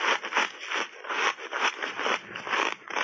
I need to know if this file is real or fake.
real